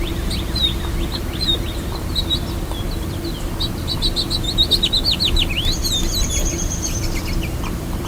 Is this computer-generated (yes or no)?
yes